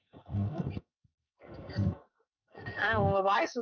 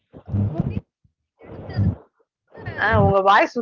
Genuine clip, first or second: second